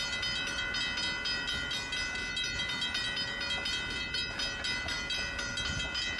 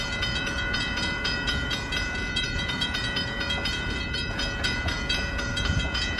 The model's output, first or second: second